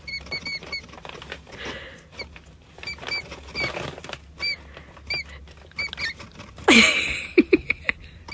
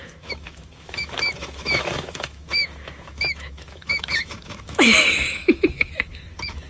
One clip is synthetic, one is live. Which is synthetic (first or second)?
second